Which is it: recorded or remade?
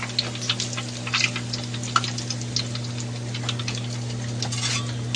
recorded